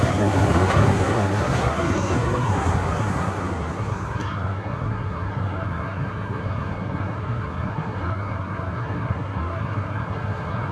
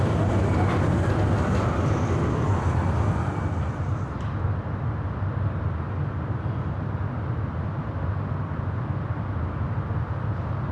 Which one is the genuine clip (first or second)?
second